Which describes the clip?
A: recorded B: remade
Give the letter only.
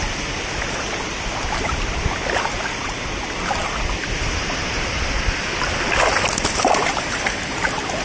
A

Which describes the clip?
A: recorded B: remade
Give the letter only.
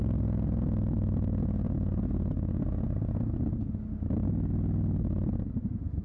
A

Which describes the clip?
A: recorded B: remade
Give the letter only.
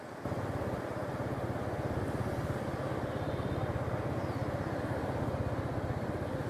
A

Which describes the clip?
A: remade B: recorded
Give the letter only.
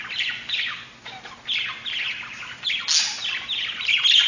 B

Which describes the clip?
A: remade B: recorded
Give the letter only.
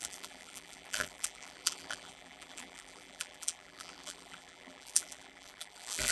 A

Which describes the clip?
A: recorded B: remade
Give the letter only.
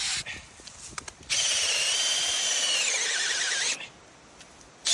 A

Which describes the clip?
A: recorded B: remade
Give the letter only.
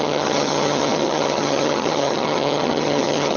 B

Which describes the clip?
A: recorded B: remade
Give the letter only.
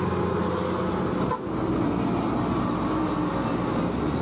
A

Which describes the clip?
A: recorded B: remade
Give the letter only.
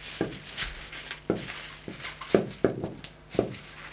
A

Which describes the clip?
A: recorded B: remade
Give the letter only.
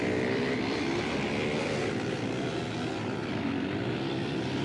B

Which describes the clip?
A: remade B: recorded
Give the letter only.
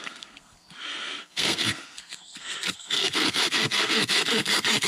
A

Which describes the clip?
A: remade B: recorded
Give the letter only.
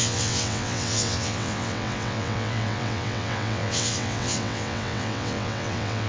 A